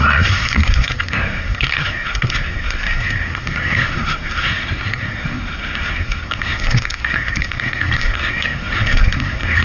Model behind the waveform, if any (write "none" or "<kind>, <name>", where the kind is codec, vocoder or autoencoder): codec, SNAC